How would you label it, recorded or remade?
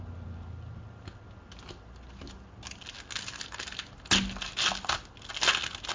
recorded